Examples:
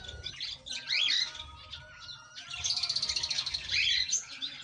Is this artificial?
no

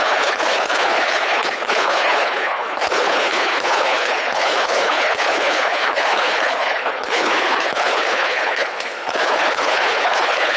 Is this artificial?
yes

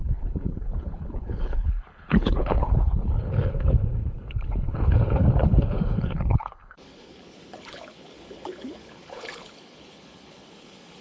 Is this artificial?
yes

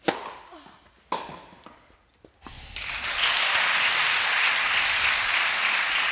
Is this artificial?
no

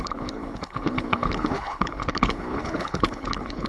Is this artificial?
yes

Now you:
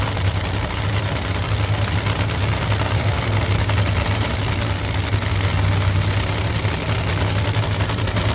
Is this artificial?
no